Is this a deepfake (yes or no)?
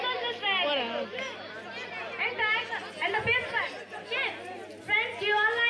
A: no